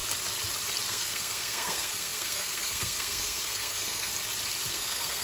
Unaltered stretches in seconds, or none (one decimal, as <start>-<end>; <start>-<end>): 0.0-0.9; 4.1-4.7